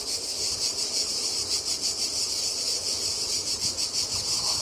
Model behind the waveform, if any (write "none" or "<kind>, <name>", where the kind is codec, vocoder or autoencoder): vocoder, BigVGAN v2